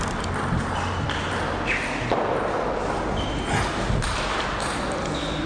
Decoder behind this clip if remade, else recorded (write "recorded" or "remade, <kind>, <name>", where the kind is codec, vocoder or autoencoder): recorded